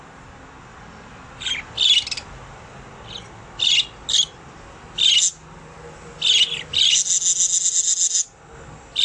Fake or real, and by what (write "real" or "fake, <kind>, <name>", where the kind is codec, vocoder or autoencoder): real